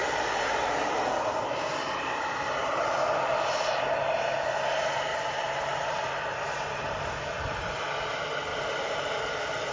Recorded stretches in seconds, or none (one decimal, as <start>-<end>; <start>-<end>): 2.8-5.1; 6.7-8.5